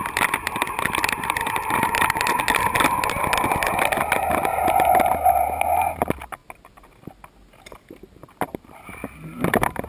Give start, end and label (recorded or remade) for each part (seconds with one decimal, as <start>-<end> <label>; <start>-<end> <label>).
0.0-9.9 recorded